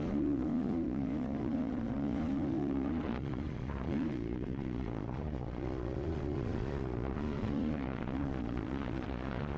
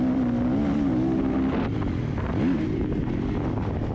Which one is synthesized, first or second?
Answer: first